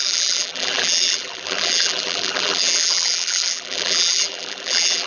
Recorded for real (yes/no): no